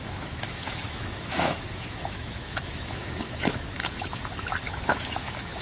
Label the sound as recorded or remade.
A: remade